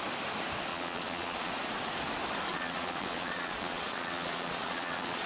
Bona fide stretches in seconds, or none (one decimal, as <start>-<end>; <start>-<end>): 0.0-0.7; 1.5-2.5